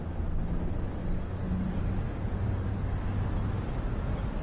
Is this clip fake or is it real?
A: real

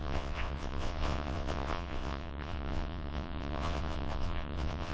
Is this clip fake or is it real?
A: fake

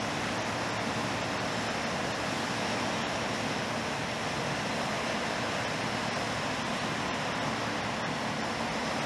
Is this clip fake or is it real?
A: real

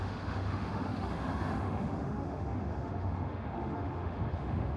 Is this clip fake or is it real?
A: fake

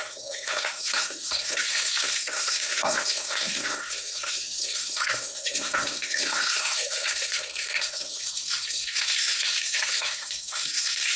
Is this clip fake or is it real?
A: fake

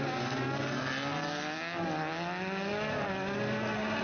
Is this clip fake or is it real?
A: real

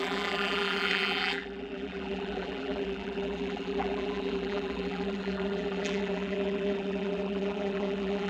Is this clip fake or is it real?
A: fake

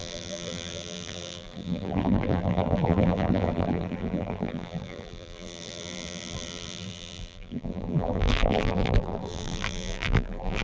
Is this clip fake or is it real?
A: fake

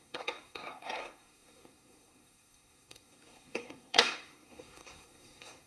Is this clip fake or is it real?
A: fake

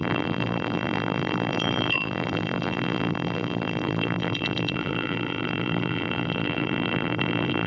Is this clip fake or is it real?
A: fake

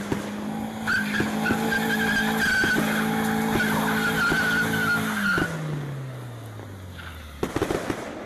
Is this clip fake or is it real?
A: real